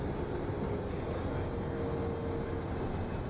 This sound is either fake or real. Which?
real